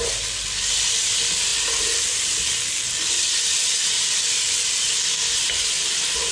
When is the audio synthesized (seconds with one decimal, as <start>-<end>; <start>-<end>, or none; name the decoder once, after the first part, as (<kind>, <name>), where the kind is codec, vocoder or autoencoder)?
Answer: none